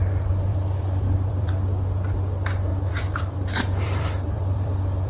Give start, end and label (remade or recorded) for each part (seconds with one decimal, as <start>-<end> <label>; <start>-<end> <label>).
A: 0.0-0.5 recorded; 0.5-1.5 remade; 1.5-2.7 recorded; 2.7-5.1 remade